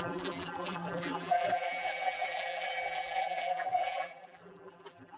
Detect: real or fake fake